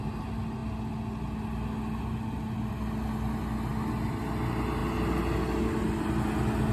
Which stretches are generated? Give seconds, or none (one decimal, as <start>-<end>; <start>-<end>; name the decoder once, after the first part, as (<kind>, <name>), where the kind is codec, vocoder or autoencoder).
none

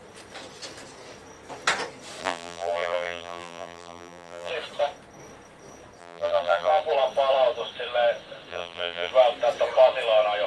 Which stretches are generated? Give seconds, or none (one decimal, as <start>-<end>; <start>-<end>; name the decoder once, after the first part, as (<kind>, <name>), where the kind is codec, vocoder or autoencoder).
2.2-4.5 (vocoder, BigVGAN v2); 6.0-6.8; 8.5-9.1

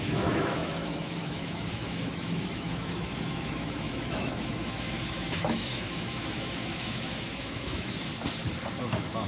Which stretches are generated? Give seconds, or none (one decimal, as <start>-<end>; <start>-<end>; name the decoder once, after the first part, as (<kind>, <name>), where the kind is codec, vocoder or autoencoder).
0.0-8.1 (autoencoder, DAC-VAE); 8.8-9.3

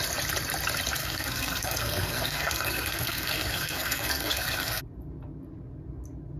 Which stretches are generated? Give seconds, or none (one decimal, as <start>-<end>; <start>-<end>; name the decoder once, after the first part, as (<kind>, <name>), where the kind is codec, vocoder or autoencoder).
1.0-4.8 (codec, SNAC)

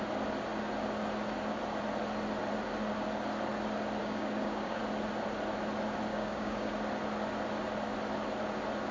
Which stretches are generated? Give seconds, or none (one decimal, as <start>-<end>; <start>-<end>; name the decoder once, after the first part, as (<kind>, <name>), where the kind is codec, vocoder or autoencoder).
4.0-4.8 (codec, DAC); 6.1-6.7

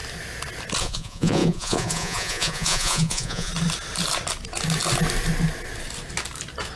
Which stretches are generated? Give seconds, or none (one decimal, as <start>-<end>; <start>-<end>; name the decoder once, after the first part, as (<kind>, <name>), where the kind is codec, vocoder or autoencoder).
0.8-3.5 (vocoder, Vocos)

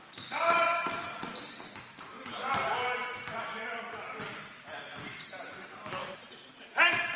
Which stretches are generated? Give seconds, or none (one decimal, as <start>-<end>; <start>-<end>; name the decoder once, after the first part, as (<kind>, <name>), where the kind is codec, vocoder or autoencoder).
4.9-5.9 (vocoder, BigVGAN v2)

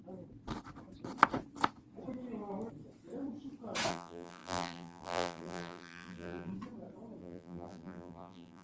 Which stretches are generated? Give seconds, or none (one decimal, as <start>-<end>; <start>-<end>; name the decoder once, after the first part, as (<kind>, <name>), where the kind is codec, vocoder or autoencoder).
3.9-6.5 (vocoder, BigVGAN v2); 7.2-8.6